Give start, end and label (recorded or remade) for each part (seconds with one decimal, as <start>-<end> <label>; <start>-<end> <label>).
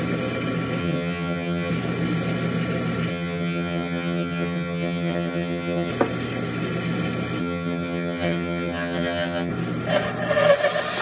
0.0-0.8 recorded; 0.8-1.7 remade; 1.7-3.1 recorded; 3.1-5.9 remade; 5.9-7.4 recorded; 7.4-9.5 remade; 9.5-11.0 recorded